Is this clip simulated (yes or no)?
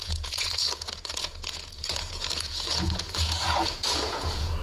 yes